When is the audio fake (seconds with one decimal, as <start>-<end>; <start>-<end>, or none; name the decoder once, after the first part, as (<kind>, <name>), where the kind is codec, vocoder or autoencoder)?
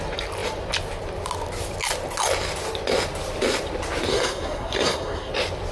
4.1-5.3 (codec, SNAC)